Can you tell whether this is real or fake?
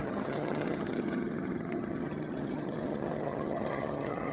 fake